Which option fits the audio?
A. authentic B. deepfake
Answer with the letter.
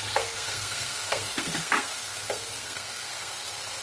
B